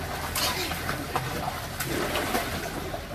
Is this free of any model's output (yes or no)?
yes